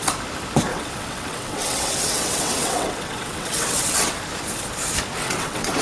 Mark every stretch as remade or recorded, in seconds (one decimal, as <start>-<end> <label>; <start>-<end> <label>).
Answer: 0.0-0.7 recorded; 0.7-4.2 remade; 4.2-5.2 recorded; 5.2-5.8 remade